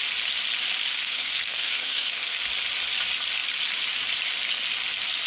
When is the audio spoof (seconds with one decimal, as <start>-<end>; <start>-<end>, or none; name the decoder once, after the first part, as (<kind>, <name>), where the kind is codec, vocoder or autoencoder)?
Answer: 1.0-2.4 (codec, SNAC)